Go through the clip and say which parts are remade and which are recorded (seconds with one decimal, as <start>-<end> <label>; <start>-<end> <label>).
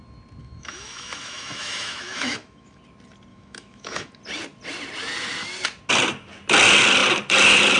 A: 0.0-0.4 recorded; 0.4-2.8 remade; 2.8-3.3 recorded; 3.3-4.2 remade; 4.2-7.8 recorded